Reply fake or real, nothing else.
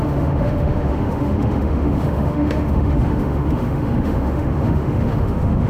fake